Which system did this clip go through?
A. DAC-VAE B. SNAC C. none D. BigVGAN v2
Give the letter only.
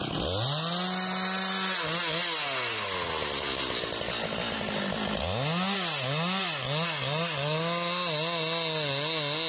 C